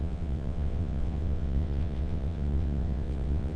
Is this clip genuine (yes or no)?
no